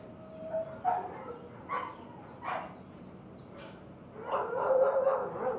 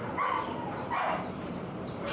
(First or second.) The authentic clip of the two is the first